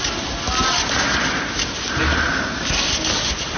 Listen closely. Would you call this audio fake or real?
real